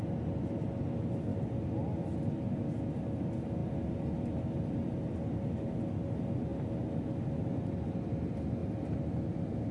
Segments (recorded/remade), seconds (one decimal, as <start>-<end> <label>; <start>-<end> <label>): 0.0-1.3 recorded; 1.3-2.3 remade; 2.3-8.6 recorded; 8.6-9.7 remade